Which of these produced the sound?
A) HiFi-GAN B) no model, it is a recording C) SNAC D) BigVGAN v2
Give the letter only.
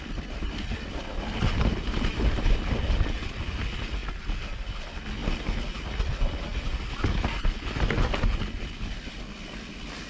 B